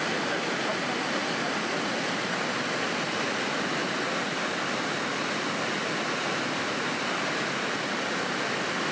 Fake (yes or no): no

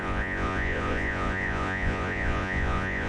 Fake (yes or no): yes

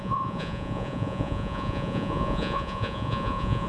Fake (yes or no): yes